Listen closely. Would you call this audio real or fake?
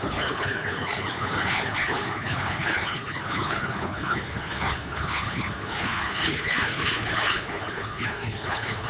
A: fake